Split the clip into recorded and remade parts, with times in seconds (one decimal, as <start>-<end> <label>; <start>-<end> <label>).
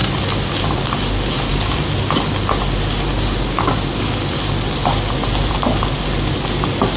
0.0-7.0 recorded